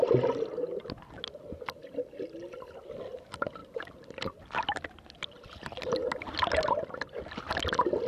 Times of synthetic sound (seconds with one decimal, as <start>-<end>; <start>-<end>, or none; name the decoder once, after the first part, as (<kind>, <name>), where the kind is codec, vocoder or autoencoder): none